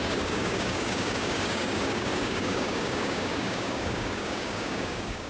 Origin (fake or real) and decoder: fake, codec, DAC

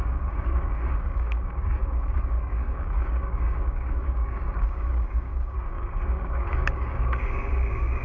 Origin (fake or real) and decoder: fake, codec, DAC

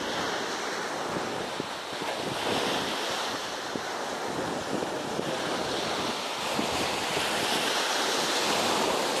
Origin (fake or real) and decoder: real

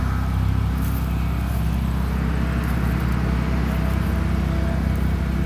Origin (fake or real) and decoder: real